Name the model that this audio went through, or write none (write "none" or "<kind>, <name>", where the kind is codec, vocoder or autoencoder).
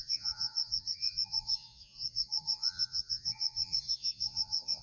vocoder, Vocos